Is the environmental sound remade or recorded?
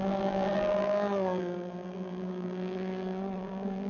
remade